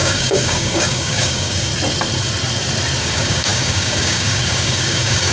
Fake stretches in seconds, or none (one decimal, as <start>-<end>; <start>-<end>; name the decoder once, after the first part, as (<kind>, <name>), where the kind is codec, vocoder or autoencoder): 0.0-1.7 (codec, DAC); 3.0-5.3